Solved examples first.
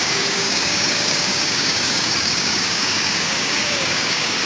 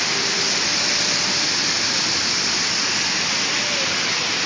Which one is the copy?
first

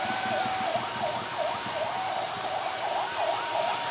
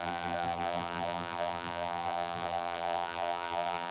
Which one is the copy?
second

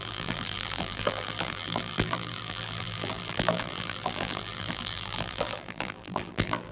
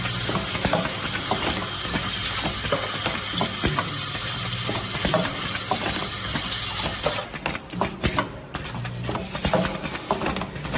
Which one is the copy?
first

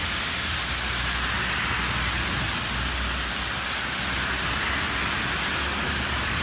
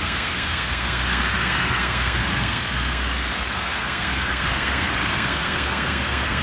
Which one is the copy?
second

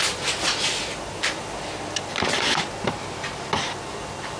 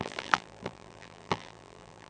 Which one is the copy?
second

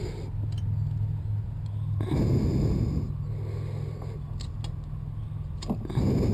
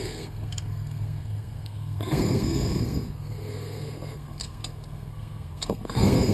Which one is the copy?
second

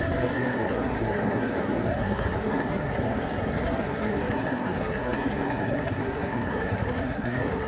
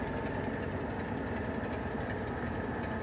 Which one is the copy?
first